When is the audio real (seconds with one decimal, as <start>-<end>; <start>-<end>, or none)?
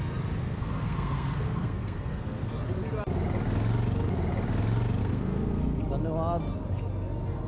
0.0-0.4; 2.6-5.0; 5.8-7.5